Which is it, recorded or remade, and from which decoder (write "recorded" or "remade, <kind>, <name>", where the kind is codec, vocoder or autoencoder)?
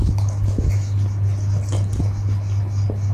recorded